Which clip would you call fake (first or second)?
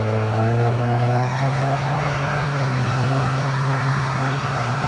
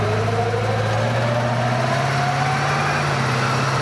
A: first